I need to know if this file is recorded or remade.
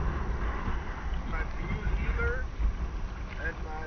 recorded